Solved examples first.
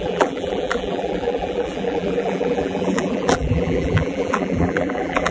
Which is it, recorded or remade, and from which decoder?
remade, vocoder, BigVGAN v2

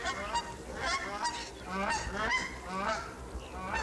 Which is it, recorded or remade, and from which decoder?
recorded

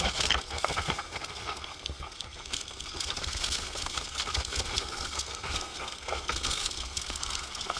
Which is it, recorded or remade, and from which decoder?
remade, codec, SNAC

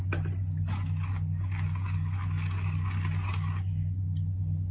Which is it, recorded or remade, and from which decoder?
recorded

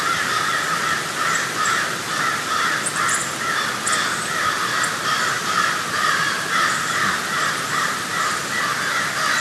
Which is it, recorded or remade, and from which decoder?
recorded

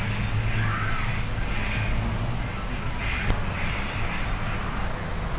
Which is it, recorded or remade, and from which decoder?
recorded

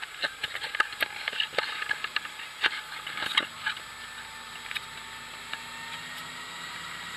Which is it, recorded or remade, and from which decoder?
recorded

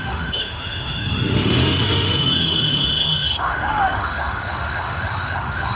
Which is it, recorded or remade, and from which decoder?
remade, autoencoder, DAC-VAE